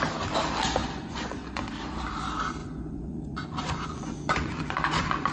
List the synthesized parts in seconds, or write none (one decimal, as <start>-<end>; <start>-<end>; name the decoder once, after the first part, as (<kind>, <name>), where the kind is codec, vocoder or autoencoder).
0.8-1.6 (vocoder, Vocos); 2.6-5.3